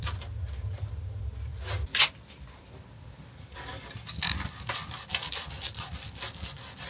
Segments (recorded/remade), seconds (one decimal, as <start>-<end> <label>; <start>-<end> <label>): 0.0-6.9 recorded